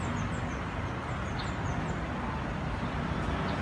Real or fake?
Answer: real